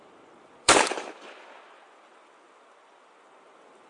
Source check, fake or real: fake